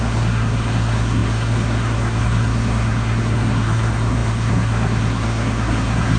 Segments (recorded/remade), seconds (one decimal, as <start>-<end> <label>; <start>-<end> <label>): 0.0-6.2 remade